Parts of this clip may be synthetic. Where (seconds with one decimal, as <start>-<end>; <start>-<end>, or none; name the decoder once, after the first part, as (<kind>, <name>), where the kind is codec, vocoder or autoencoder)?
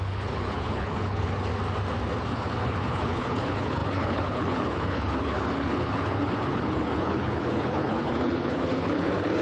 0.0-1.5 (codec, HILCodec); 2.2-9.4